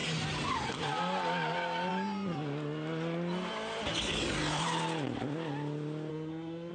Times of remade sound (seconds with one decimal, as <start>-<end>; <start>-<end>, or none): 6.1-6.7